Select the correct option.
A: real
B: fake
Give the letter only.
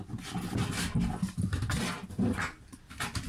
A